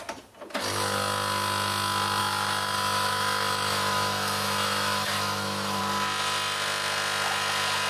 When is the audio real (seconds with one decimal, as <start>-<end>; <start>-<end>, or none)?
0.0-2.2; 5.8-7.9